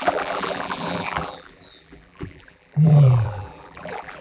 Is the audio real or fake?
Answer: fake